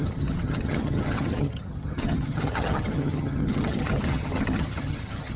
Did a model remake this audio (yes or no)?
yes